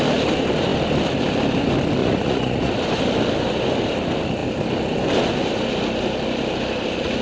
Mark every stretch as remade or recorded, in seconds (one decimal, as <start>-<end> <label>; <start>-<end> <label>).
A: 0.0-2.0 recorded; 2.0-2.7 remade; 2.7-7.2 recorded